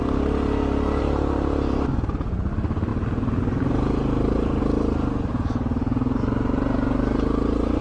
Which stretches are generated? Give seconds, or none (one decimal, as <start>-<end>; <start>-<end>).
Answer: none